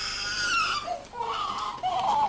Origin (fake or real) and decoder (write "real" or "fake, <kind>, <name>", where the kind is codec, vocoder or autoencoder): real